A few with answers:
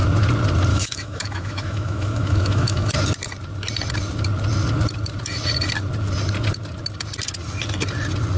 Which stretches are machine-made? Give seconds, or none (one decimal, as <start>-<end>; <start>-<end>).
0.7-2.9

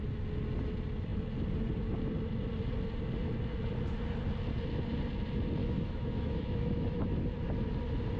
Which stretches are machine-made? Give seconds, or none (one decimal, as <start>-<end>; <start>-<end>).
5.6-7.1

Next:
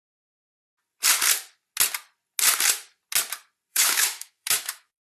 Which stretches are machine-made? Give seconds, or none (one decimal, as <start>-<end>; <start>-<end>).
3.7-5.1

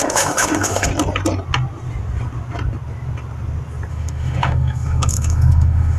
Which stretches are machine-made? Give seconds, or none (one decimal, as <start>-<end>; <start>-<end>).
0.0-0.9; 3.9-6.0

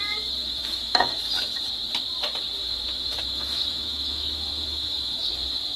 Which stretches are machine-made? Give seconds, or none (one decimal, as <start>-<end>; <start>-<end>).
0.4-1.2; 2.6-5.3